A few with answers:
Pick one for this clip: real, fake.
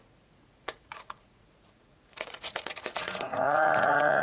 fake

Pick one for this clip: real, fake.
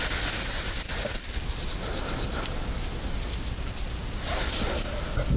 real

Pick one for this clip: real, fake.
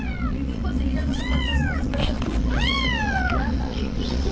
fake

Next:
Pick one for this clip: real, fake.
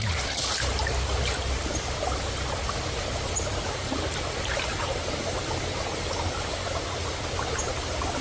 real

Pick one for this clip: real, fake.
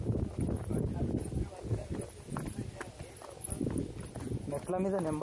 real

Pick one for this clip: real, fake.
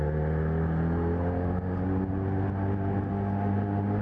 real